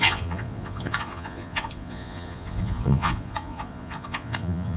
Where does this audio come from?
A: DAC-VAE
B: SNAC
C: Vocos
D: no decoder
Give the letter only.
C